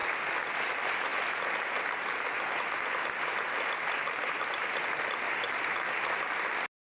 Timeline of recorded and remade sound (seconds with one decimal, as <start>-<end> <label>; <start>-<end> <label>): 0.0-7.0 recorded